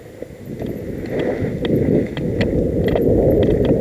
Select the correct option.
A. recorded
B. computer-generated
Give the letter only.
A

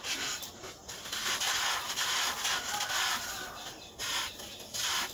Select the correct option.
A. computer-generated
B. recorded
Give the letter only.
B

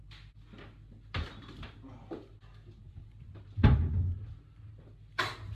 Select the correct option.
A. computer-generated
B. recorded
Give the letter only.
B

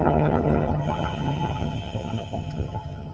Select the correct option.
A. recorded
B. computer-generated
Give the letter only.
B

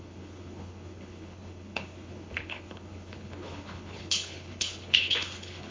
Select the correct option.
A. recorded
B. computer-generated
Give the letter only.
B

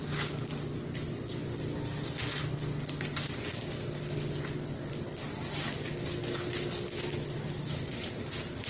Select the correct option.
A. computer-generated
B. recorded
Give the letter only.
B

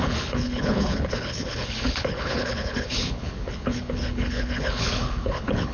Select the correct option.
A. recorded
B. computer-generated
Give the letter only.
B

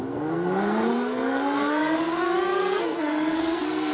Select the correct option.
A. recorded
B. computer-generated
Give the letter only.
B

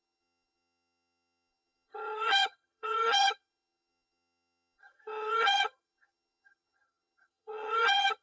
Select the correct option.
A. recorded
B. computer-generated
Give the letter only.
B